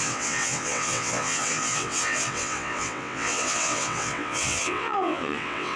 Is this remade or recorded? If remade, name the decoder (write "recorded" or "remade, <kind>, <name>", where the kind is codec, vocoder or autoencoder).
remade, vocoder, WaveNeXt